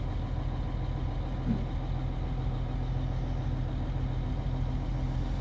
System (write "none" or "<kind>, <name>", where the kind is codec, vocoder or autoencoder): none